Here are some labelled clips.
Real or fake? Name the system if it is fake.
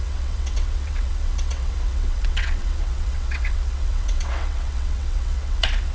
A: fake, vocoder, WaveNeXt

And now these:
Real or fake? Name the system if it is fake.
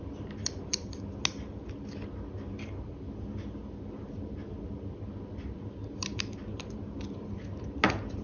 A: real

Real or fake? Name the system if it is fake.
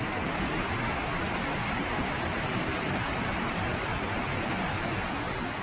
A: fake, vocoder, BigVGAN v2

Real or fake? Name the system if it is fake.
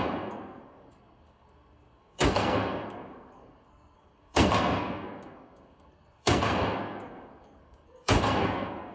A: fake, codec, SNAC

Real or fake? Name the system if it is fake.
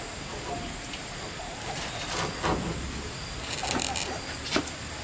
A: real